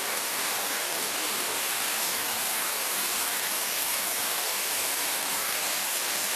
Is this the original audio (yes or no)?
no